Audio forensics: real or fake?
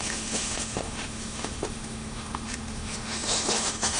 fake